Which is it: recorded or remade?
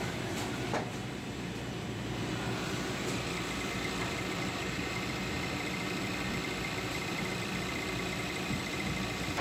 remade